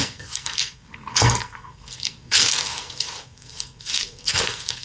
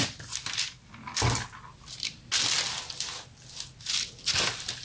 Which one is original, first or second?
second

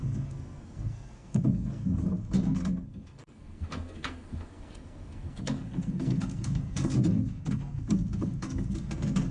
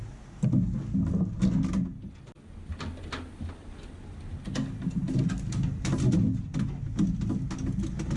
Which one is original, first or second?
second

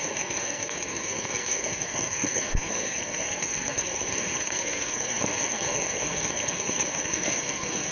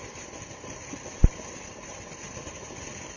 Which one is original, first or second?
second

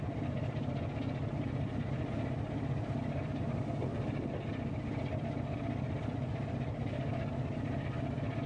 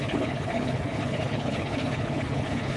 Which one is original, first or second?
first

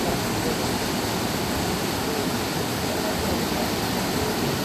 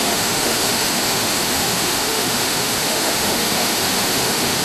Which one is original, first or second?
first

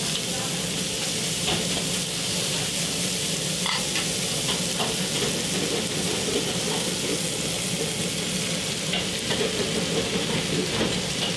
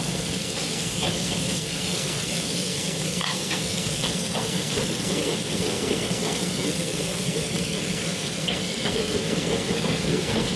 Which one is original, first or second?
first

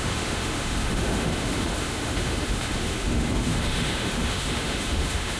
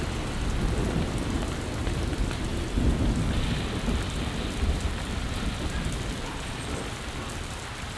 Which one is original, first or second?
second